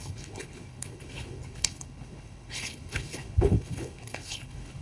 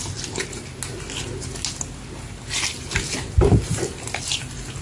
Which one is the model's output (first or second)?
first